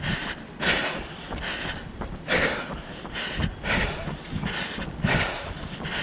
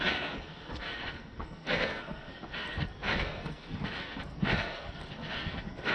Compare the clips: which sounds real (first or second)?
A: first